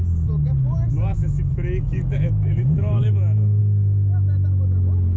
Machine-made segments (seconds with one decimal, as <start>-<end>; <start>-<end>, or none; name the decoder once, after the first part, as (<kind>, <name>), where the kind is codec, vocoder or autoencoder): 1.1-3.6 (autoencoder, DAC-VAE)